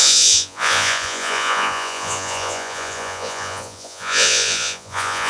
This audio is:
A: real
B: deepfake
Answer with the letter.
B